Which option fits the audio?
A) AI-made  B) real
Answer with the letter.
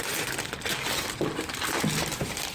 B